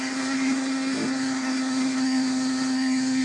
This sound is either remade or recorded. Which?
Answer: remade